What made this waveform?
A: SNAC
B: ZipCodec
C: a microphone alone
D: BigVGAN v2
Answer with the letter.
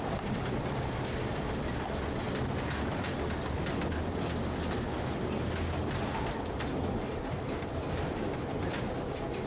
C